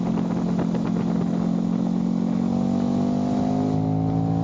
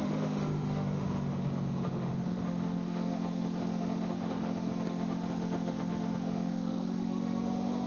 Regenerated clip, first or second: second